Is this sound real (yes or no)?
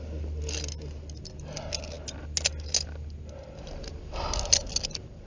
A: yes